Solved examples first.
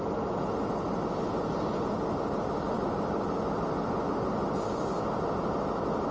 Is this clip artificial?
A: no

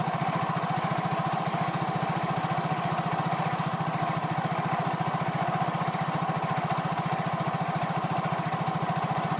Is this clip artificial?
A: no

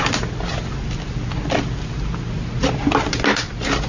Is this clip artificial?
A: no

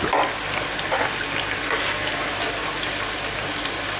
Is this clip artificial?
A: no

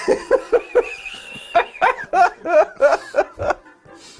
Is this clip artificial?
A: yes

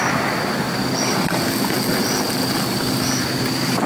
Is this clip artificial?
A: no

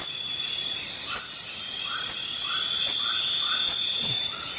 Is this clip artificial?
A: no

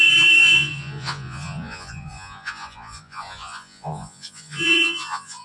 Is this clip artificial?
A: yes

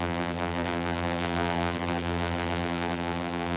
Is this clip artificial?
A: yes